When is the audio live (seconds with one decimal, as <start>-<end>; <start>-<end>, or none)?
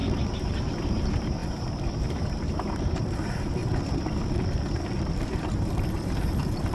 3.6-5.1